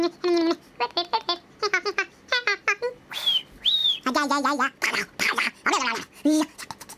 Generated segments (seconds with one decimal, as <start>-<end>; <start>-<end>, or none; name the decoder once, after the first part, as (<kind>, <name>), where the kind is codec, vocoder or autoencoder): none

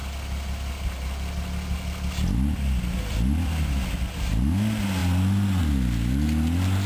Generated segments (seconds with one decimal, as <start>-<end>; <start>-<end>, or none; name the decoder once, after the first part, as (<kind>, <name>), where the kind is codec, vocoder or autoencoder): none

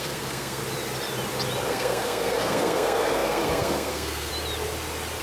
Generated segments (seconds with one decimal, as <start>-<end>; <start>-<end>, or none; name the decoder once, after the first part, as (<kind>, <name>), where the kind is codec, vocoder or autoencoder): 0.0-0.6 (codec, SNAC); 1.7-4.3

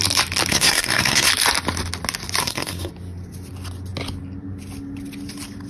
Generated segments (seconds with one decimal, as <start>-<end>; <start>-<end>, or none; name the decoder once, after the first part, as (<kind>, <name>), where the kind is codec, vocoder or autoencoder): 0.5-1.3 (codec, SNAC); 2.4-2.9

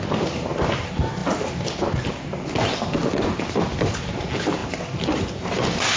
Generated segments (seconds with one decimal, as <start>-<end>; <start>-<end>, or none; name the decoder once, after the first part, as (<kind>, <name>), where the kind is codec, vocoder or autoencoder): none

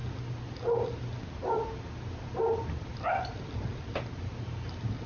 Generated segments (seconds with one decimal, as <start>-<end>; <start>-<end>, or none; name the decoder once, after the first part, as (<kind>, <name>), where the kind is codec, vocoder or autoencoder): none